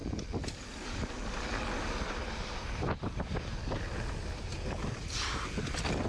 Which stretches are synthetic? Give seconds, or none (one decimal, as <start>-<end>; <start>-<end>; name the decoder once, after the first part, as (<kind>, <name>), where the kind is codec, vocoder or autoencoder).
none